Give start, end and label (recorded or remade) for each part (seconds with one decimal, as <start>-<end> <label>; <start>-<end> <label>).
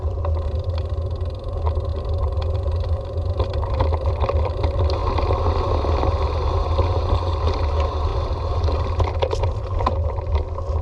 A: 0.0-10.8 recorded